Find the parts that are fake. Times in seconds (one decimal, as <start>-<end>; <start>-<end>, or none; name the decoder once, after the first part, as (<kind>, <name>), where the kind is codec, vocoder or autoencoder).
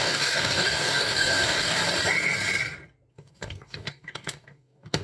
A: 0.0-1.8 (codec, DAC); 3.1-5.0